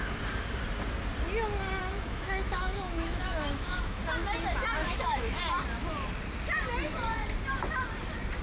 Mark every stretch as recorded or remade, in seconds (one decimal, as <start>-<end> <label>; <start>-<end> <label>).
0.0-1.8 recorded; 1.8-4.0 remade; 4.0-4.8 recorded; 4.8-5.4 remade; 5.4-8.4 recorded